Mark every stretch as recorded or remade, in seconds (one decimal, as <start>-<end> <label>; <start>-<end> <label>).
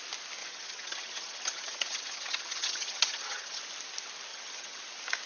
0.0-0.4 recorded; 0.4-3.6 remade; 3.6-4.3 recorded; 4.3-4.8 remade; 4.8-5.3 recorded